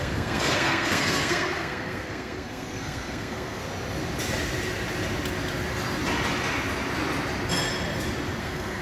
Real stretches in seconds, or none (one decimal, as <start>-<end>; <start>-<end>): 3.6-8.4